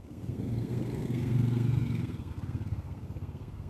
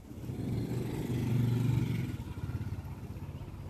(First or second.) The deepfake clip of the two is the first